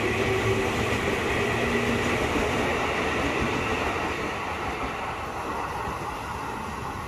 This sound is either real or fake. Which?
real